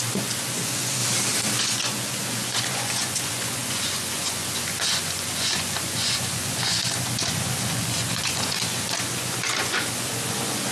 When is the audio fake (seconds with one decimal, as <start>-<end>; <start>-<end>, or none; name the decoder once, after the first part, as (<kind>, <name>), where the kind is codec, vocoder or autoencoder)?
0.0-1.0 (vocoder, Vocos); 1.6-10.7